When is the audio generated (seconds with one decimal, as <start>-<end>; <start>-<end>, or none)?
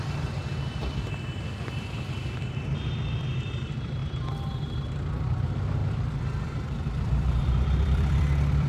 0.0-0.4; 3.3-4.0; 5.2-8.7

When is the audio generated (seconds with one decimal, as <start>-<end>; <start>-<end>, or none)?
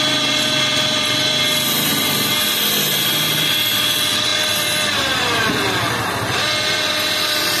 none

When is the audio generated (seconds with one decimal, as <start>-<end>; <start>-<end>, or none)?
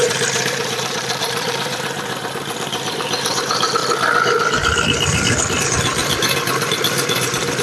0.0-3.8; 5.6-7.6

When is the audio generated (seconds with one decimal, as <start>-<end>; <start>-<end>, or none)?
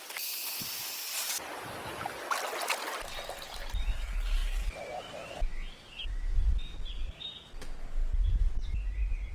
none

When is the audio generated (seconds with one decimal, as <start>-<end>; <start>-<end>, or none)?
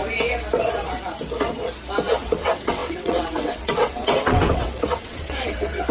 2.2-5.9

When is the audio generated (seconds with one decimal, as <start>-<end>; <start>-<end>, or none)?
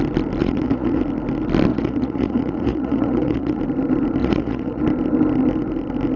0.4-1.0; 1.7-3.6; 4.2-4.8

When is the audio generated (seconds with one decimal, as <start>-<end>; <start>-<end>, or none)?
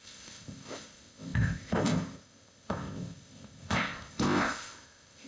0.0-5.3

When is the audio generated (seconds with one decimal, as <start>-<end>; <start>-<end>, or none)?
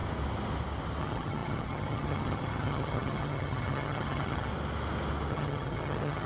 1.0-4.5; 5.3-6.3